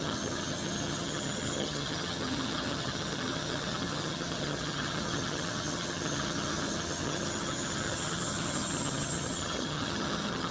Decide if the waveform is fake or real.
fake